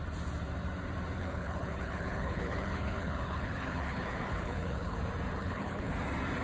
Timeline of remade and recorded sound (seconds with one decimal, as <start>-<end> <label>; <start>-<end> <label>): 0.0-1.2 recorded; 1.2-5.0 remade; 5.0-5.4 recorded; 5.4-5.9 remade; 5.9-6.4 recorded